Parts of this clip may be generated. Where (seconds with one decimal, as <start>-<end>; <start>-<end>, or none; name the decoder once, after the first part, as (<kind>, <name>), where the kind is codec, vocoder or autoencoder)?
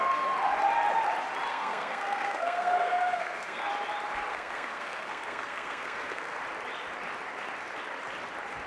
1.5-3.7 (codec, SNAC); 4.3-6.4